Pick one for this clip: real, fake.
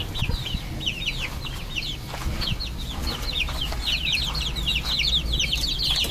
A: real